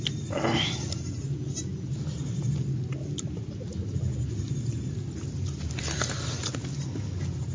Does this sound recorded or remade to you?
recorded